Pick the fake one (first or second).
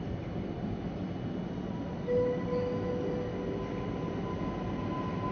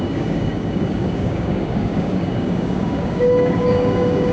second